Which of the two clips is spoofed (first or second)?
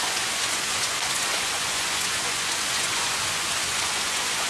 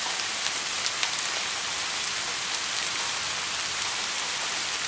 first